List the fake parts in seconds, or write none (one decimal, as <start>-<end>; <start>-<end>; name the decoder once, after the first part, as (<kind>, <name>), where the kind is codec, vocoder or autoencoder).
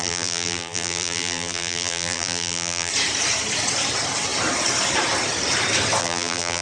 0.0-2.9 (vocoder, BigVGAN v2); 6.0-6.6